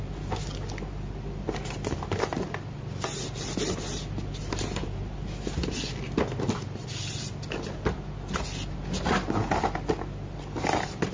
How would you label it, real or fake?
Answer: real